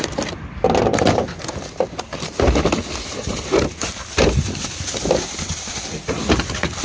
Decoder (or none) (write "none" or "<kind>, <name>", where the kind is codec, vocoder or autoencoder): none